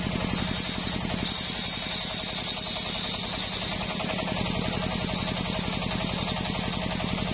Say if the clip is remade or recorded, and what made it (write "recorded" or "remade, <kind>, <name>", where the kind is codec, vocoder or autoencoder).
recorded